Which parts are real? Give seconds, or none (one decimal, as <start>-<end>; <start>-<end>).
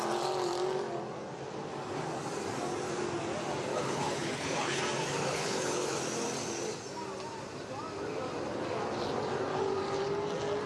0.0-3.7; 4.8-5.2; 6.0-10.7